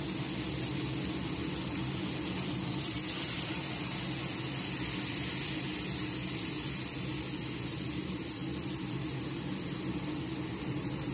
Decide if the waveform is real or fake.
real